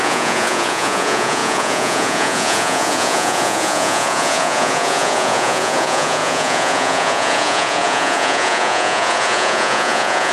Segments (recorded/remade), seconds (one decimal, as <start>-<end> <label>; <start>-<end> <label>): 0.0-10.3 remade